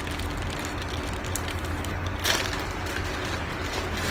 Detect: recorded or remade recorded